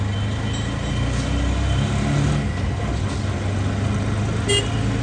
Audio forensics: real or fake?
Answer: real